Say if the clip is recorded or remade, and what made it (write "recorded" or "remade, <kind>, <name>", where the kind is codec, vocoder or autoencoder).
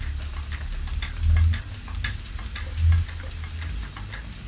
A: recorded